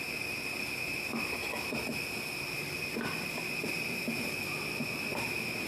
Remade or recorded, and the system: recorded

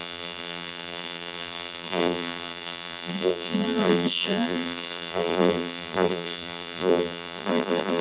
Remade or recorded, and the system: remade, vocoder, BigVGAN v2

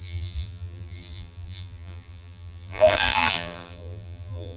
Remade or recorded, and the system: remade, vocoder, BigVGAN v2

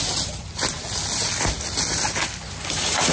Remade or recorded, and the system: recorded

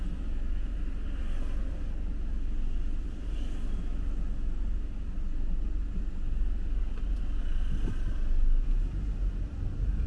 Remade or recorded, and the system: recorded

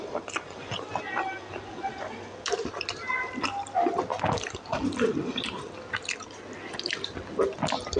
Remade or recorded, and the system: recorded